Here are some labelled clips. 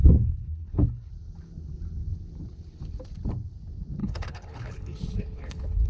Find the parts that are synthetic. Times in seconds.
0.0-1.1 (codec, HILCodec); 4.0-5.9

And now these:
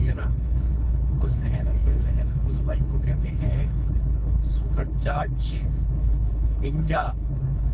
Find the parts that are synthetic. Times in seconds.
0.0-7.7 (codec, HILCodec)

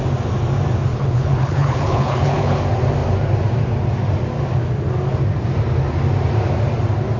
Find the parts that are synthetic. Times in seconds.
0.9-2.6 (codec, HILCodec)

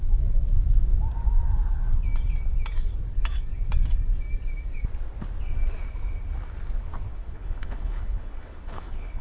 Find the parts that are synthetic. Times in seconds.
7.1-9.2 (codec, HILCodec)

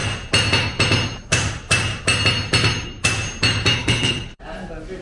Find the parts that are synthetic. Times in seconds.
3.8-4.4 (codec, HILCodec)

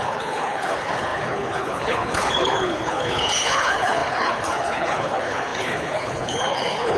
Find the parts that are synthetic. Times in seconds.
0.0-7.0 (codec, HILCodec)

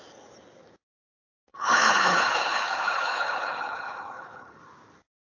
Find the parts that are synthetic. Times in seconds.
1.5-4.6 (codec, HILCodec)